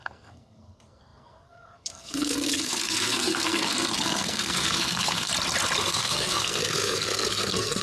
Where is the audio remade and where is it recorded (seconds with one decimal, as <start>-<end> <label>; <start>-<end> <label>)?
0.0-5.3 remade; 5.3-5.8 recorded; 5.8-7.8 remade